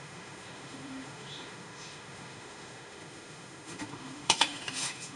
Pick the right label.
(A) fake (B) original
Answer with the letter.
A